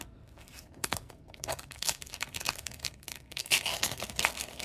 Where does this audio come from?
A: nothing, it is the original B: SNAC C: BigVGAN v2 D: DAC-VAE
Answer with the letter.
B